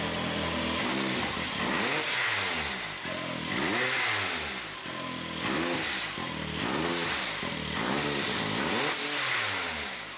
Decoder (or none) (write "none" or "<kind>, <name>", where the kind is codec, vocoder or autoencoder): none